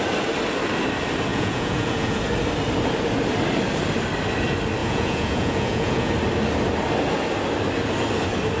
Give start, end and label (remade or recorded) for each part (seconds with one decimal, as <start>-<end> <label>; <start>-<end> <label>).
0.0-1.3 recorded; 1.3-2.2 remade; 2.2-4.8 recorded; 4.8-6.1 remade; 6.1-8.6 recorded